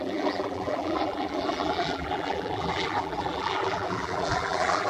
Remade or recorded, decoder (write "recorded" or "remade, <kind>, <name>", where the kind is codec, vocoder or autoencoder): remade, vocoder, BigVGAN v2